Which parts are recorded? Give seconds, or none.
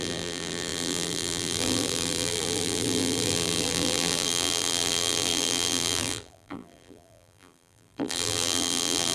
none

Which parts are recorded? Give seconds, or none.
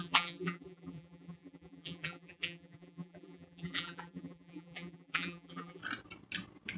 5.8-6.8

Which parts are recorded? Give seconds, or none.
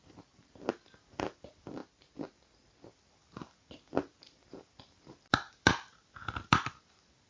0.4-1.0; 1.8-2.9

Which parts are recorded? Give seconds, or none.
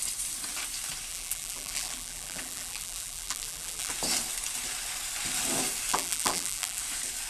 0.0-1.1; 3.9-5.9; 6.8-7.3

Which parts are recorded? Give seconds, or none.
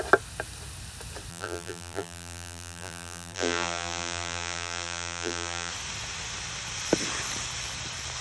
0.0-1.3; 5.7-8.2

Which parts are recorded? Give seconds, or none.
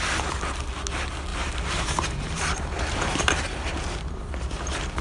0.0-1.3; 4.3-5.0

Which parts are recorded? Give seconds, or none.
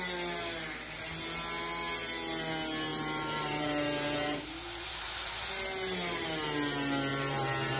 0.0-2.9; 5.5-7.1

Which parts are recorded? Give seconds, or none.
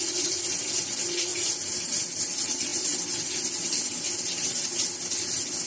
0.0-5.7